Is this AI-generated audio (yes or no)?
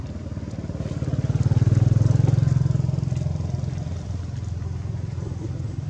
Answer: no